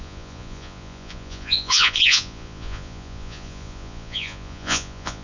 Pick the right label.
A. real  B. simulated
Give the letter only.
B